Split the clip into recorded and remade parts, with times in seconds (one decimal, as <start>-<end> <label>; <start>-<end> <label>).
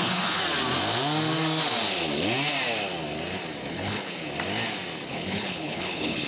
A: 0.0-0.4 remade; 0.4-3.7 recorded; 3.7-4.2 remade; 4.2-5.1 recorded; 5.1-6.3 remade